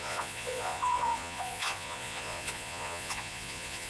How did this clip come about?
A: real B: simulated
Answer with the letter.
B